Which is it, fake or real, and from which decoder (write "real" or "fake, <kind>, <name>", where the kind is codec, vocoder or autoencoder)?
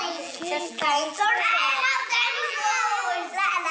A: fake, vocoder, BigVGAN v2